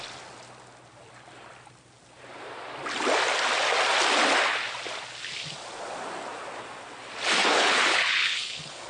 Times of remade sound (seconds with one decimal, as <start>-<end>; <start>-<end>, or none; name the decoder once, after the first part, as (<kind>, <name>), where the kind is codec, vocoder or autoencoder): 7.4-8.9 (codec, HILCodec)